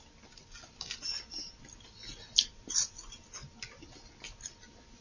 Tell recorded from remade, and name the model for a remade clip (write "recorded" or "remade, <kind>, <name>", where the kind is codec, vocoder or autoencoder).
recorded